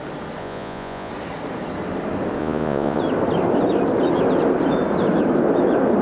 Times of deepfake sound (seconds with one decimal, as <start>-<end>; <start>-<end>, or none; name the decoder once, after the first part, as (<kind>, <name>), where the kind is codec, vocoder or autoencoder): 0.4-1.1 (vocoder, Vocos); 2.4-3.0